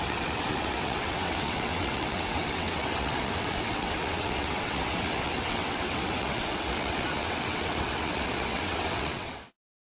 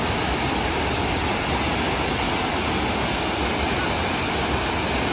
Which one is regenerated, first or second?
first